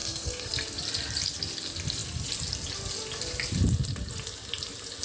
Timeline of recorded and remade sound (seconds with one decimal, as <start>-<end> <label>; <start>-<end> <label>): 0.0-0.5 remade; 0.5-5.0 recorded